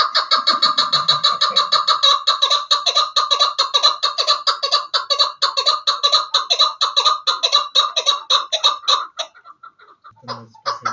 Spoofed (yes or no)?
no